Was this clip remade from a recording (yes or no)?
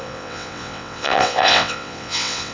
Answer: yes